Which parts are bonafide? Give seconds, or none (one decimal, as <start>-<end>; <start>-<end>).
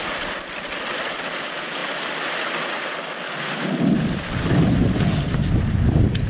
0.0-6.3